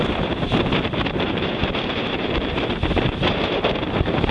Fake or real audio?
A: fake